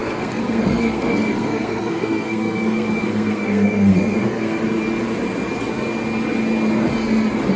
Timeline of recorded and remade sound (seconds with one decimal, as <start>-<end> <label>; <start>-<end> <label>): 0.0-4.6 remade; 4.6-7.6 recorded